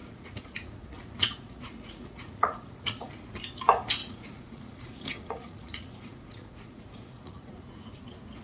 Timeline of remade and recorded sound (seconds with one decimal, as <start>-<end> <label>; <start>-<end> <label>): 0.0-3.1 remade; 3.1-4.0 recorded; 4.0-8.0 remade; 8.0-8.4 recorded